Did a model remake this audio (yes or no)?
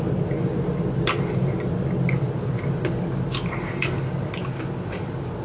no